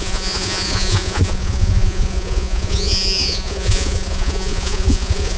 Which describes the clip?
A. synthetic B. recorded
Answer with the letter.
A